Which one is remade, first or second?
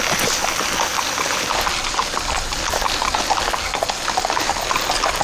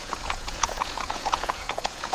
second